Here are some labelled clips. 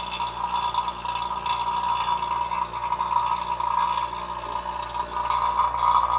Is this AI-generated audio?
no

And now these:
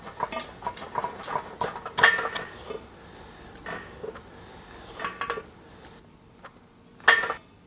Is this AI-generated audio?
no